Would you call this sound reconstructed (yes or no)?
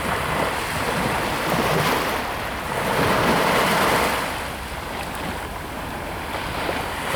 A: no